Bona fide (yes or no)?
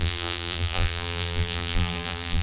no